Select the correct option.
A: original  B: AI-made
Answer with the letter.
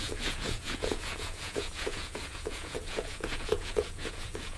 B